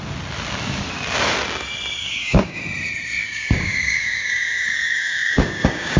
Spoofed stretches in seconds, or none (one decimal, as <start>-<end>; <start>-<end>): 2.0-2.6; 3.2-6.0